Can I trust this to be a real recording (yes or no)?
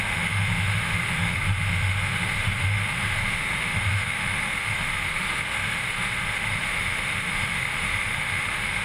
no